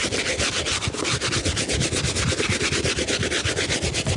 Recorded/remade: recorded